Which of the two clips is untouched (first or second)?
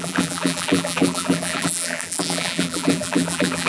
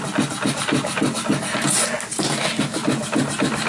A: second